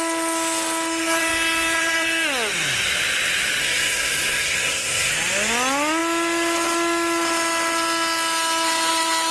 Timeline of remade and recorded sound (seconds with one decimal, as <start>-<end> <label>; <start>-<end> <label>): 0.0-3.6 recorded; 3.6-5.1 remade; 5.1-9.3 recorded